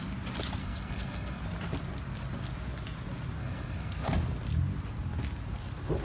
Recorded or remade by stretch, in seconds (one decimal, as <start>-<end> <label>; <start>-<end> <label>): 0.0-0.6 recorded; 0.6-1.4 remade; 1.4-3.4 recorded; 3.4-4.1 remade; 4.1-6.0 recorded